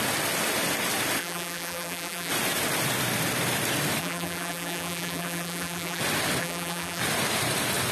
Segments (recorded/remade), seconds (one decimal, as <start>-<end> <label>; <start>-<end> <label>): 0.0-1.2 recorded; 1.2-2.3 remade; 2.3-4.0 recorded; 4.0-6.0 remade; 6.0-6.4 recorded; 6.4-7.0 remade; 7.0-7.9 recorded